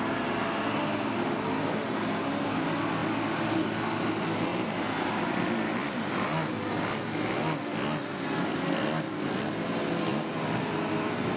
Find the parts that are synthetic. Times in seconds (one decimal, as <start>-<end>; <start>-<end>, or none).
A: none